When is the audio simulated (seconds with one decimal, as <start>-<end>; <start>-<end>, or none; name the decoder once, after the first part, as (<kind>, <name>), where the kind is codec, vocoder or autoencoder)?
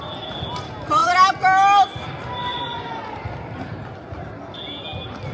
none